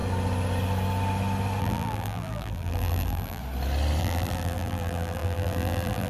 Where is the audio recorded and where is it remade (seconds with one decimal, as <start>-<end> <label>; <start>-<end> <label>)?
0.0-1.6 recorded; 1.6-3.4 remade; 3.4-4.0 recorded; 4.0-6.1 remade